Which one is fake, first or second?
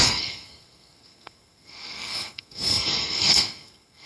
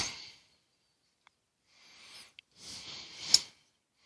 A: first